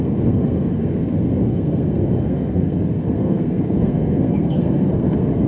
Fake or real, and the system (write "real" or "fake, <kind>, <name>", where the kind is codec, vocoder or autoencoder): fake, codec, SNAC